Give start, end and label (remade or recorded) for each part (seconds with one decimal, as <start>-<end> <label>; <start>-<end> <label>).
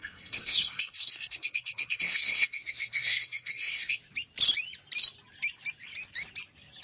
0.0-4.0 remade; 4.0-6.8 recorded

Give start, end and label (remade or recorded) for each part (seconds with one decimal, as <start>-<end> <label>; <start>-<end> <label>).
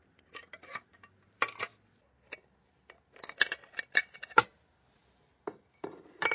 0.0-1.7 remade; 1.7-4.0 recorded; 4.0-6.3 remade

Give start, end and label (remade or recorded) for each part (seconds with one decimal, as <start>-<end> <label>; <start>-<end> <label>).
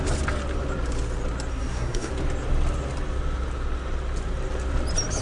0.0-1.5 recorded; 1.5-2.1 remade; 2.1-5.2 recorded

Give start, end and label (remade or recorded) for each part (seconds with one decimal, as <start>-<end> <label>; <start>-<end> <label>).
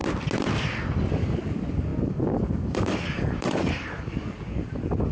0.0-1.1 recorded; 1.1-5.1 remade